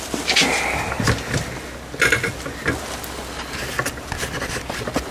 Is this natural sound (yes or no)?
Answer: yes